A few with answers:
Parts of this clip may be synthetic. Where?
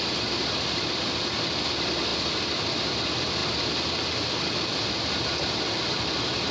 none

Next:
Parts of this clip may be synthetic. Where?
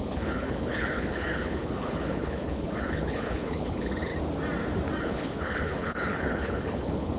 0.0-4.1 (codec, HILCodec); 5.0-7.2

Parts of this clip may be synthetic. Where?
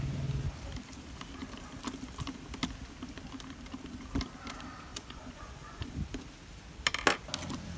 4.9-5.9 (vocoder, Vocos)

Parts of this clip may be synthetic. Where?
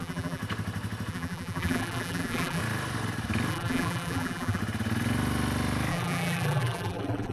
0.0-0.4 (vocoder, BigVGAN v2); 1.1-2.6; 3.5-4.6; 5.9-7.3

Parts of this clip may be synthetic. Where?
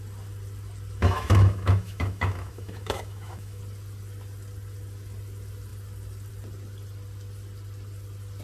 1.0-3.6 (autoencoder, DAC-VAE)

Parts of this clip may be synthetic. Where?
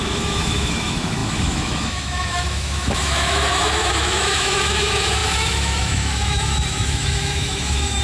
0.0-8.0 (autoencoder, DAC-VAE)